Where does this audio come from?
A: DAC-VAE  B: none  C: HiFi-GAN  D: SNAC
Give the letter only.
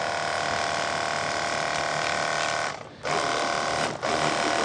B